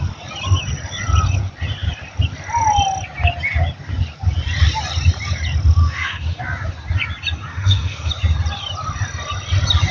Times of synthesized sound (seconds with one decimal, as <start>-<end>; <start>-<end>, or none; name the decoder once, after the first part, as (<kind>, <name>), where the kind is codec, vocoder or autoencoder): 5.8-6.4 (autoencoder, DAC-VAE); 7.5-8.1